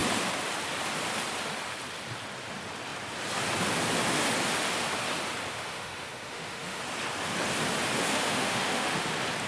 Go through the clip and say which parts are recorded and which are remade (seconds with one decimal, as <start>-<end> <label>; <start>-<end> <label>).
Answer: 0.0-5.5 recorded; 5.5-6.8 remade; 6.8-8.0 recorded; 8.0-9.1 remade; 9.1-9.5 recorded